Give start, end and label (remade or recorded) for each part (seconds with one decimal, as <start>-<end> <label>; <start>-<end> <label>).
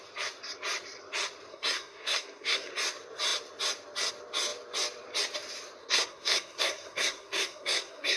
0.0-1.5 recorded; 1.5-2.7 remade; 2.7-5.8 recorded; 5.8-8.2 remade